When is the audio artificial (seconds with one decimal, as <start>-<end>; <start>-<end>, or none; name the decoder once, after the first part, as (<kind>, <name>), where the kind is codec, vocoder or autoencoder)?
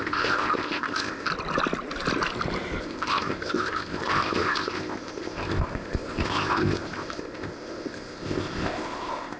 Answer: 0.0-1.3 (codec, ZipCodec); 2.8-9.4